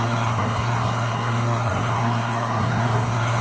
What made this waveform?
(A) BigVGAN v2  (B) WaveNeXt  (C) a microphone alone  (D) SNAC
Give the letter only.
D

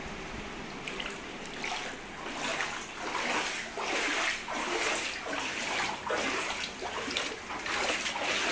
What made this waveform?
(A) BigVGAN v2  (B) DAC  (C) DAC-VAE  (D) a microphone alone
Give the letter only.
D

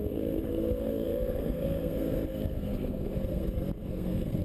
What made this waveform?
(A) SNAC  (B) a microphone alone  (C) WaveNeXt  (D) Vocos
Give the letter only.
A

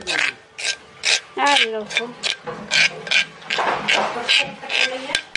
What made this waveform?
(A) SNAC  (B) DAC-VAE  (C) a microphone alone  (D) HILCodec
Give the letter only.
C